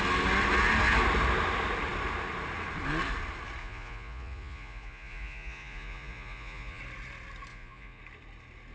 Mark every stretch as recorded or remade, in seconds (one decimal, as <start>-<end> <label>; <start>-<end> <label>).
0.0-3.6 recorded; 3.6-6.8 remade; 6.8-7.5 recorded; 7.5-8.0 remade; 8.0-8.7 recorded